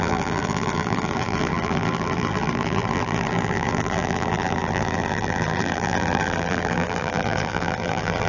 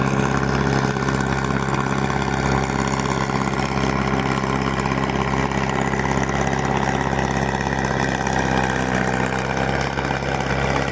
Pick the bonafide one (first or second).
second